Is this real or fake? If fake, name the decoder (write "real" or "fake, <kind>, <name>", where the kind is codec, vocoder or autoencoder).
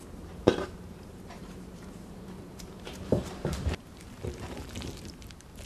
fake, vocoder, BigVGAN v2